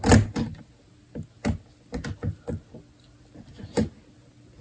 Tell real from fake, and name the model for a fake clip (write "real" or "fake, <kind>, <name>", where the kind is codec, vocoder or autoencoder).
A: real